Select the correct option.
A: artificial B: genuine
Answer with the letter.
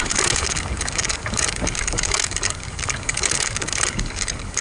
A